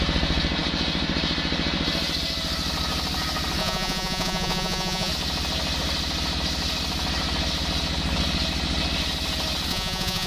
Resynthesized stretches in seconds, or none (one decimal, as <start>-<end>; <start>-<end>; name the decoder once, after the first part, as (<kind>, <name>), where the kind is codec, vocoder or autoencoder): 3.6-5.1 (vocoder, Vocos); 9.7-10.3